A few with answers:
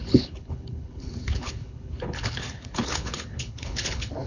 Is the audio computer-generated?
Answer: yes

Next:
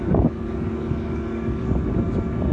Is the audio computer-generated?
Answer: yes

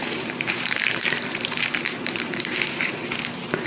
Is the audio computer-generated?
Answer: yes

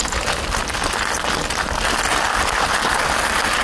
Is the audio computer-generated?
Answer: no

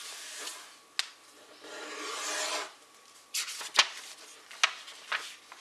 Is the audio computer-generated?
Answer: no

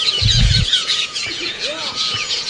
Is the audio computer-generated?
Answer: yes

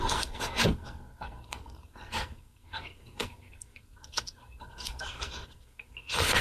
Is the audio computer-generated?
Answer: yes